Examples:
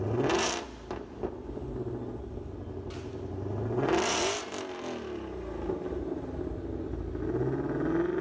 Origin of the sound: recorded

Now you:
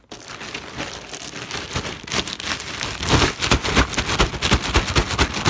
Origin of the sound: recorded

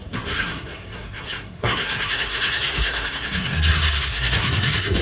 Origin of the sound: remade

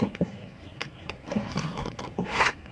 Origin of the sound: remade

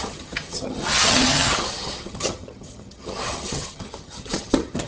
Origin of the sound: remade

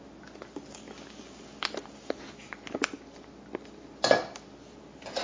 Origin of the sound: recorded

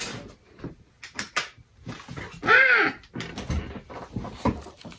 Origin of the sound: recorded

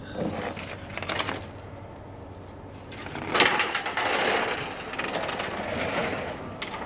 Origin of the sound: recorded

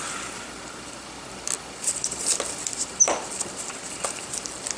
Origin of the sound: recorded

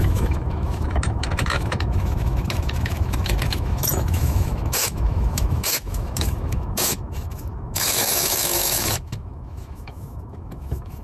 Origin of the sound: remade